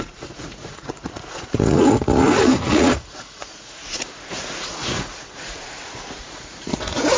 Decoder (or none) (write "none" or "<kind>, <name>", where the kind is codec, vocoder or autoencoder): vocoder, Vocos